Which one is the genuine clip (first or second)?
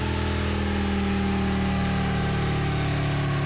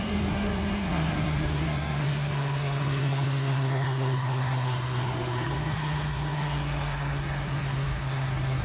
first